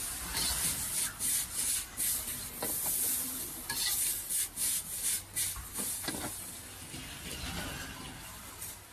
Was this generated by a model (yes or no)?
no